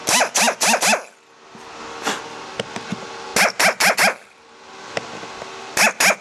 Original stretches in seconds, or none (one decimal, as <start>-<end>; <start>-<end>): 0.0-6.2